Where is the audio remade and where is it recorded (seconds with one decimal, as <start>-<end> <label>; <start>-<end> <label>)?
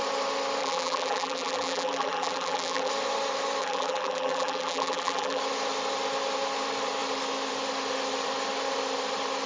0.0-0.6 recorded; 0.6-2.9 remade; 2.9-3.6 recorded; 3.6-5.4 remade; 5.4-9.5 recorded